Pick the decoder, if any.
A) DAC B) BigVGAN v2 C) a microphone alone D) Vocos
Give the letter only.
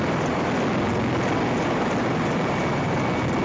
C